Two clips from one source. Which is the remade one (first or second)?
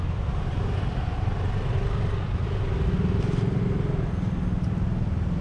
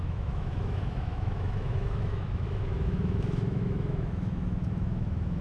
second